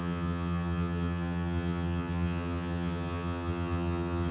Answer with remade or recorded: remade